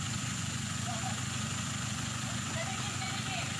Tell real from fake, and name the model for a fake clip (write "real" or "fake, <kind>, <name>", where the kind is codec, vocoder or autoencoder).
fake, vocoder, Vocos